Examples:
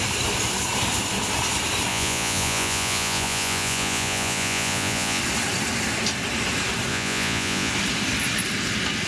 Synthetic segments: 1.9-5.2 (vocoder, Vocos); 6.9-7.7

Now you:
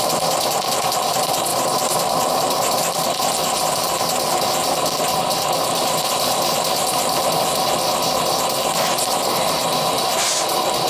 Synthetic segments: none

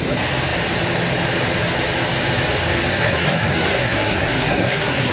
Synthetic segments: 2.9-5.1 (codec, SNAC)